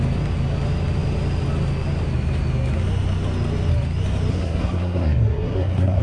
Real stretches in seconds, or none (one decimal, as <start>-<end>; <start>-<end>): 0.0-4.3